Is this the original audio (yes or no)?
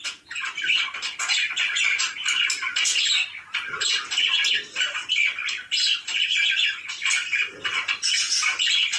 yes